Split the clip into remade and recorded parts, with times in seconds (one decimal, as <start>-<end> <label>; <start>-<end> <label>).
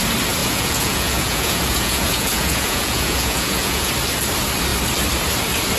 0.0-0.4 recorded; 0.4-3.9 remade; 3.9-5.8 recorded